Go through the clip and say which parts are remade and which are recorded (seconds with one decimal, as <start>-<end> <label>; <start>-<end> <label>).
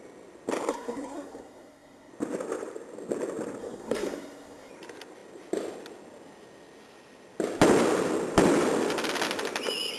0.0-0.7 recorded; 0.7-2.1 remade; 2.1-3.6 recorded; 3.6-4.7 remade; 4.7-10.0 recorded